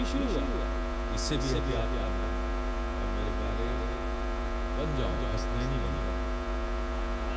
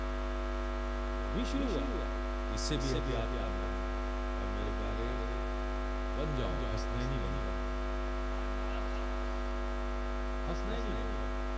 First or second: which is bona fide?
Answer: second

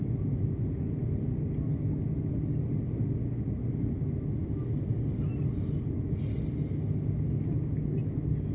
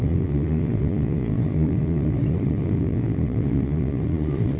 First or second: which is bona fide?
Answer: first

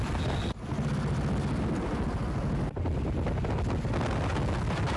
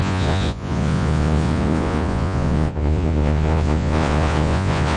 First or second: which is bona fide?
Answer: first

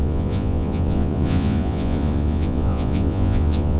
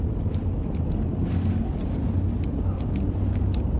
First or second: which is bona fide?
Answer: second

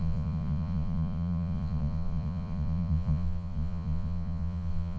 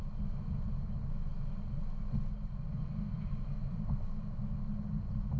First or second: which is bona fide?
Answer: second